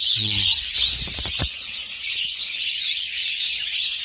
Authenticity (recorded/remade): remade